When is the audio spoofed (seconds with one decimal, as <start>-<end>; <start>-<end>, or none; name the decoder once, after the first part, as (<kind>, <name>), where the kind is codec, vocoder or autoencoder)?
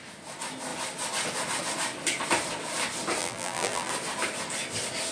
3.2-3.9 (vocoder, BigVGAN v2)